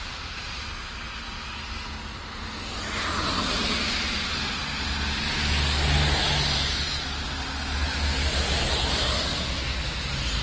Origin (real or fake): real